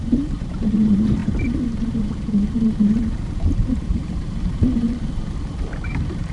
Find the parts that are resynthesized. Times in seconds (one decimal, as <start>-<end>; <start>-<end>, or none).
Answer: 0.0-6.3